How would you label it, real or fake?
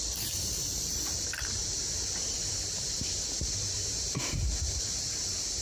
fake